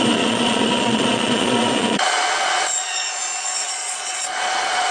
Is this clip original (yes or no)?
no